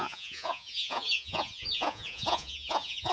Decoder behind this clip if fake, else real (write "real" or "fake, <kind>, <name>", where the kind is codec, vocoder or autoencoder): fake, vocoder, Vocos